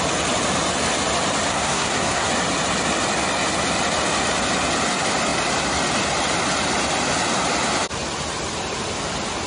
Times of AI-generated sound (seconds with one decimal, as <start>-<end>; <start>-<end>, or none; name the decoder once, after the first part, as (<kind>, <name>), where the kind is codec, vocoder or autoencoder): 1.5-2.3 (codec, SNAC)